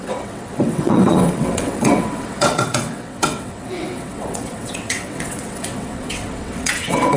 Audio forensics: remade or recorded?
remade